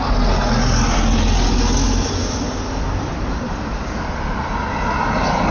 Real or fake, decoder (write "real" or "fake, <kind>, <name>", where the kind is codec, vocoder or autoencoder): real